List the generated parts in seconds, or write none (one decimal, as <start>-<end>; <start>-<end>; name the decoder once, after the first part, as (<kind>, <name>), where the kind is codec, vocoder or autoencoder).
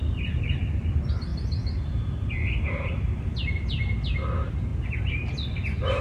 none